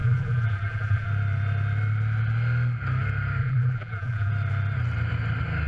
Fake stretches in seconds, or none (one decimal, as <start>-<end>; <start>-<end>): 0.0-1.1; 3.4-4.3